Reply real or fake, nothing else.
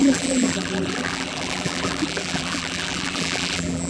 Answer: fake